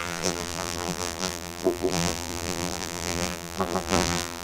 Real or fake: fake